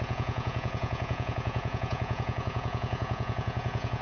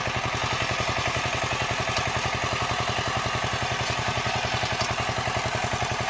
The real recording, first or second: second